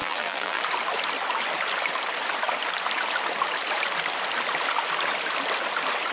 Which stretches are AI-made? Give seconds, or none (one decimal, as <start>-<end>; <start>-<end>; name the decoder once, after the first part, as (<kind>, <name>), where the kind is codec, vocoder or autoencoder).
0.0-0.6 (vocoder, BigVGAN v2)